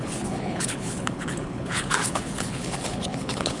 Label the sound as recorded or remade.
remade